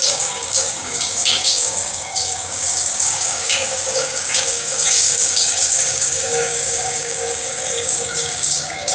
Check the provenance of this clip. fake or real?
fake